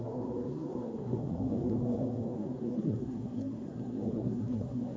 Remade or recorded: remade